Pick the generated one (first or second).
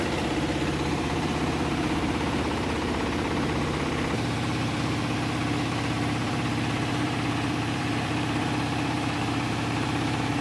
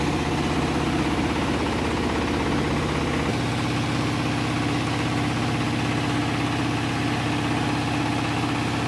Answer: first